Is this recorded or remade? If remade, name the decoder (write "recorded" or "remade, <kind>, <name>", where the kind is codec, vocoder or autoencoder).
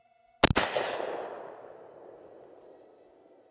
recorded